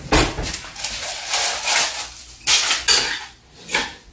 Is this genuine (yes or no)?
yes